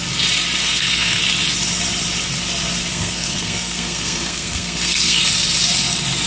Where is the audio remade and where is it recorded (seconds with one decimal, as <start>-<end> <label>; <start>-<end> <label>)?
0.0-0.6 recorded; 0.6-1.2 remade; 1.2-2.9 recorded; 2.9-5.2 remade; 5.2-6.3 recorded